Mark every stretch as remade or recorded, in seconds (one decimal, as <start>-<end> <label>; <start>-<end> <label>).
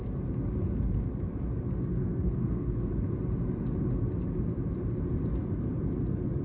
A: 0.0-2.0 recorded; 2.0-2.9 remade; 2.9-6.4 recorded